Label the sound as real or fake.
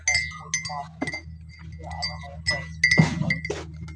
real